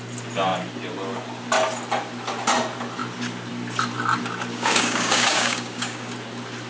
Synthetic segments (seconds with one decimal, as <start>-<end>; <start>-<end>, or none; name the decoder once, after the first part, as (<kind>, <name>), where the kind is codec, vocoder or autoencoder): 4.5-6.1 (codec, DAC)